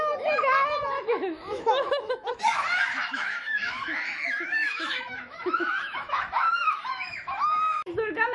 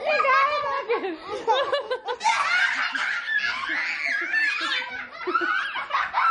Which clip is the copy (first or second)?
first